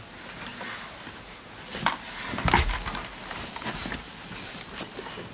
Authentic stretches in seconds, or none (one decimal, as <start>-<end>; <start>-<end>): 0.0-5.3